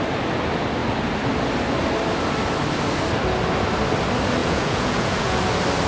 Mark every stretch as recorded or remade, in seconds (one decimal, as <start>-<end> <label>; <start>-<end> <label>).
0.0-4.4 recorded; 4.4-5.4 remade; 5.4-5.9 recorded